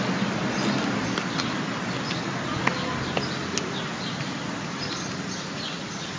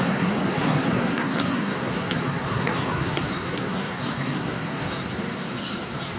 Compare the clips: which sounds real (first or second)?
first